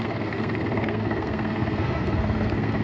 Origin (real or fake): fake